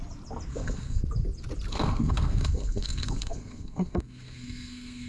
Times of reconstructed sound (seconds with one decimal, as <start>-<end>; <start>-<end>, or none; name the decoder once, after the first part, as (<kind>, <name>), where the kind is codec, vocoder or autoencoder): 0.5-1.0 (codec, SNAC); 1.7-5.1